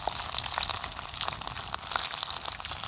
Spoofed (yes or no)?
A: no